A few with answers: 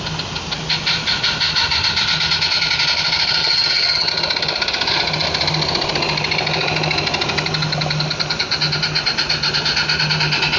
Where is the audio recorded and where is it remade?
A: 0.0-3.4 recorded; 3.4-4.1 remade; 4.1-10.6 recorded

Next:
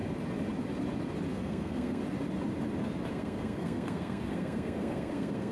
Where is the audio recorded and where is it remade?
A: 0.0-1.3 recorded; 1.3-2.0 remade; 2.0-3.1 recorded; 3.1-5.5 remade

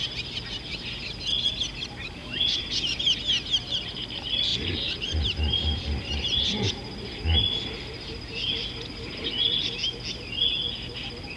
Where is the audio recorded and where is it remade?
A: 0.0-0.6 remade; 0.6-2.2 recorded; 2.2-3.0 remade; 3.0-4.5 recorded; 4.5-6.4 remade; 6.4-11.4 recorded

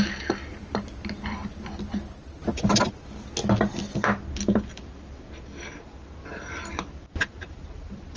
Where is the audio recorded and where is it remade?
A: 0.0-8.2 recorded

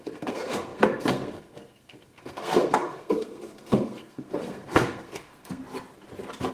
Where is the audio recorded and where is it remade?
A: 0.0-5.6 remade; 5.6-6.5 recorded

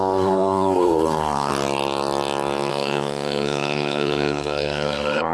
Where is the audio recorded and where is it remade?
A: 0.0-1.5 remade; 1.5-2.7 recorded; 2.7-5.3 remade

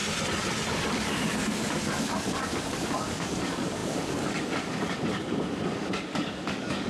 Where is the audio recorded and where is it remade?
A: 0.0-0.9 recorded; 0.9-6.9 remade

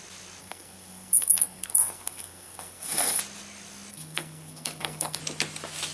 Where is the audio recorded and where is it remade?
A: 0.0-0.4 recorded; 0.4-3.2 remade; 3.2-3.9 recorded; 3.9-5.2 remade; 5.2-5.9 recorded